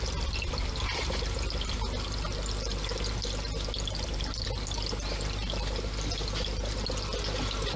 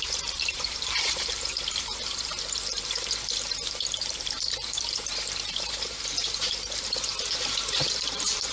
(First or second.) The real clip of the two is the first